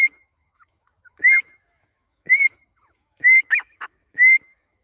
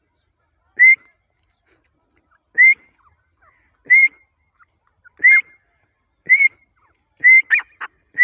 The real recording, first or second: second